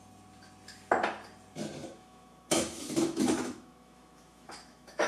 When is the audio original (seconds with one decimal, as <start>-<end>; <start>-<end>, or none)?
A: 0.0-1.8